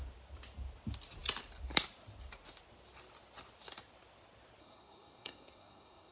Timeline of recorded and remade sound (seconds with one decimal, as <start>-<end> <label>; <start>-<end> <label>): 0.0-4.6 recorded; 4.6-6.1 remade